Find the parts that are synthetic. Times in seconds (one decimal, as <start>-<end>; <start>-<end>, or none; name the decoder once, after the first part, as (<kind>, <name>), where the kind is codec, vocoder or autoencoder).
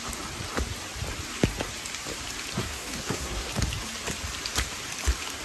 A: 2.6-3.5 (codec, SNAC)